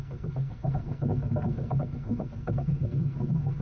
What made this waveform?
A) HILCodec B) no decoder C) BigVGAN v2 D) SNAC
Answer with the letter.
D